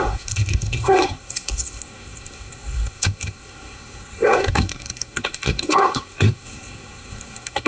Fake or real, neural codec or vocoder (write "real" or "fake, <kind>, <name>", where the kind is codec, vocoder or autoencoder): fake, codec, SNAC